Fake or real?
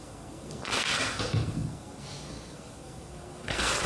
fake